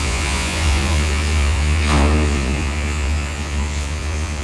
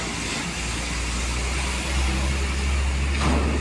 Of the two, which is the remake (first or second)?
first